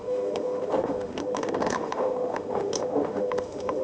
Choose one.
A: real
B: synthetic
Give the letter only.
B